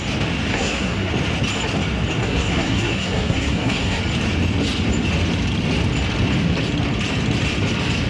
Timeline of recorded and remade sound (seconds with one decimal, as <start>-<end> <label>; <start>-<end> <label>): 0.0-0.5 recorded; 0.5-1.1 remade; 1.1-2.2 recorded; 2.2-4.0 remade; 4.0-8.1 recorded

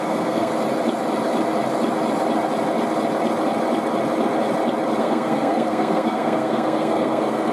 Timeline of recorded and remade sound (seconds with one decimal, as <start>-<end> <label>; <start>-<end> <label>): 0.0-0.5 remade; 0.5-5.0 recorded; 5.0-7.5 remade

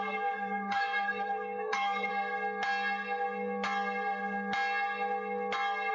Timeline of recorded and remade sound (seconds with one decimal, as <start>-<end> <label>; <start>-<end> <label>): 0.0-2.1 remade; 2.1-5.9 recorded

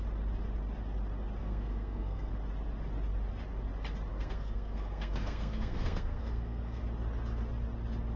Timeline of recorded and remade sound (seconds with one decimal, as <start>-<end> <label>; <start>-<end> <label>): 0.0-1.4 recorded; 1.4-2.3 remade; 2.3-4.1 recorded; 4.1-6.8 remade; 6.8-8.2 recorded

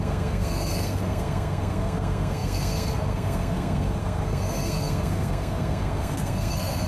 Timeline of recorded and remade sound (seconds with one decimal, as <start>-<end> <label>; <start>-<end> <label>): 0.0-6.9 remade

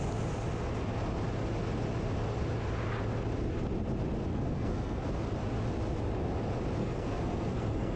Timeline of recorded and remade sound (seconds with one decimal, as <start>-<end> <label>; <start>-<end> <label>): 0.0-4.3 recorded; 4.3-5.1 remade; 5.1-6.8 recorded; 6.8-8.0 remade